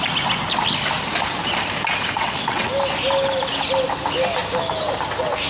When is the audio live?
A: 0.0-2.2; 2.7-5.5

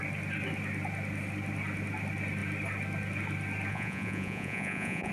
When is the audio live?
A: 0.0-3.7